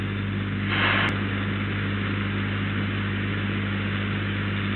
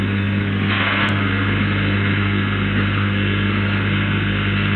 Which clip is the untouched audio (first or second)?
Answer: first